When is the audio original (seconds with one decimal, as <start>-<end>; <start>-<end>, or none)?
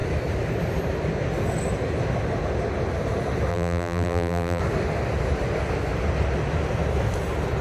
0.0-3.5; 4.6-7.6